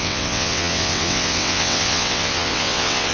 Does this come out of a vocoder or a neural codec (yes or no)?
yes